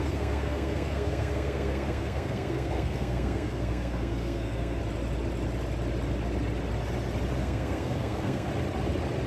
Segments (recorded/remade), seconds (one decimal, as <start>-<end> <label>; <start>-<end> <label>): 0.0-4.8 remade; 4.8-7.4 recorded; 7.4-8.5 remade; 8.5-9.3 recorded